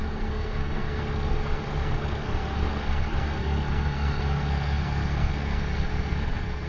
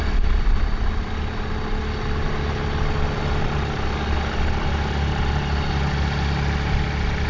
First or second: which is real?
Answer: second